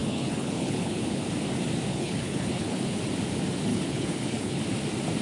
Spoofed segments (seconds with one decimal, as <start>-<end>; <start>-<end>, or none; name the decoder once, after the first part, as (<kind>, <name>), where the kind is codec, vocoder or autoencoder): 0.0-1.2 (codec, HILCodec); 1.9-3.0; 3.7-4.6